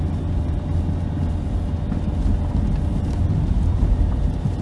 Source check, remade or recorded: recorded